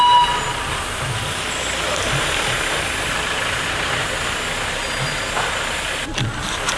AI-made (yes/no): no